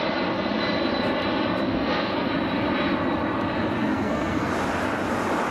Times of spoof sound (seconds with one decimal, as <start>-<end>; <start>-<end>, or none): 1.7-2.3; 3.8-4.5